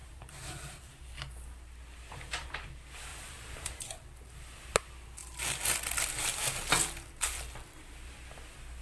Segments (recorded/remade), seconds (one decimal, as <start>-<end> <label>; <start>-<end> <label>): 0.0-0.9 remade; 0.9-2.1 recorded; 2.1-2.7 remade; 2.7-3.1 recorded; 3.1-3.8 remade; 3.8-8.8 recorded

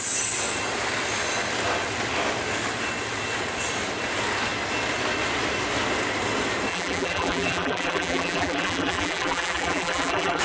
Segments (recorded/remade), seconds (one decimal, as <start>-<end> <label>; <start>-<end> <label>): 0.0-6.7 recorded; 6.7-10.4 remade

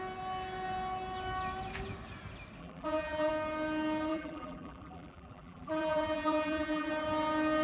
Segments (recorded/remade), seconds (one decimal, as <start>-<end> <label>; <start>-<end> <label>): 0.0-2.6 recorded; 2.6-3.3 remade; 3.3-4.1 recorded; 4.1-6.9 remade; 6.9-7.6 recorded

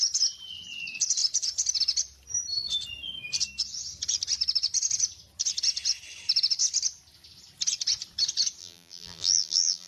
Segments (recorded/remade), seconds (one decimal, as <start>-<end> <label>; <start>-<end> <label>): 0.0-8.6 recorded; 8.6-9.9 remade

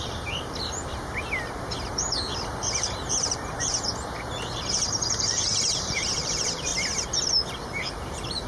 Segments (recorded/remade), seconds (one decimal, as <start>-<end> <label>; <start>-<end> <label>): 0.0-6.7 remade; 6.7-7.8 recorded; 7.8-8.5 remade